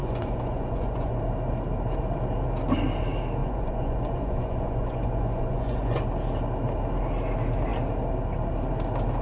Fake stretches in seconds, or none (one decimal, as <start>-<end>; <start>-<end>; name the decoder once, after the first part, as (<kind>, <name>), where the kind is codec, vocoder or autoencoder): 0.0-1.2 (vocoder, Vocos); 3.4-6.0